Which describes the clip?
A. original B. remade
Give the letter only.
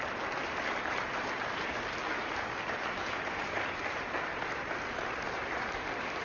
A